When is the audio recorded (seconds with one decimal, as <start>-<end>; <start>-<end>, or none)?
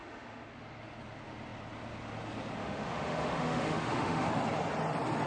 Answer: 0.5-2.6; 4.3-5.3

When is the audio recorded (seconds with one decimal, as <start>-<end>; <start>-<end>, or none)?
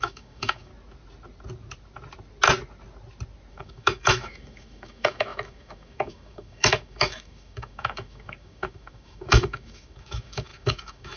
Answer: 0.7-3.5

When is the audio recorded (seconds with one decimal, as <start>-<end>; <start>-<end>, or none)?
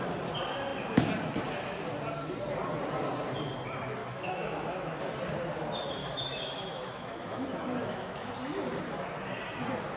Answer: 0.0-4.0; 5.0-6.0; 8.3-10.0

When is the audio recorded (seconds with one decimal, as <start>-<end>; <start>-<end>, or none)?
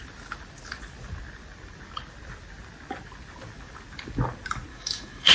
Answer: 0.0-4.7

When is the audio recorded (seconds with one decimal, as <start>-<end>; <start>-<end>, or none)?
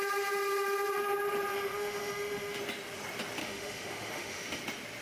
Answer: 0.0-1.5; 2.6-3.4; 4.6-5.0